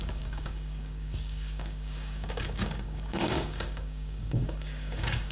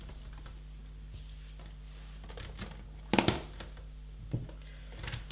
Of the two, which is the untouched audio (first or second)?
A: second